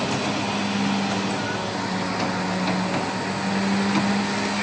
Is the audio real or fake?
real